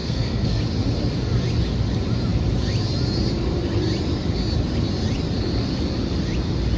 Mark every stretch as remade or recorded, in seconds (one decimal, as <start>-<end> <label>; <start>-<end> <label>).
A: 0.0-0.6 remade; 0.6-6.8 recorded